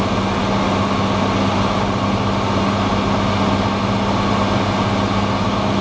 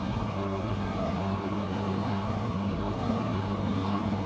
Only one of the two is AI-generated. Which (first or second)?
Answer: second